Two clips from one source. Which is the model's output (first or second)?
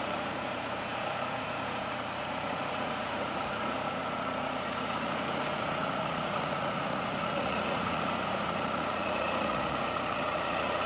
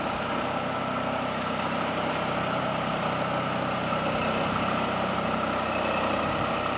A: first